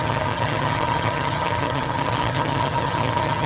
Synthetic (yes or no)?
yes